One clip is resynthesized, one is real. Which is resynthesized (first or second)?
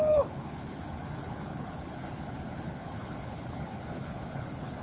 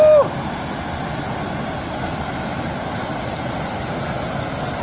first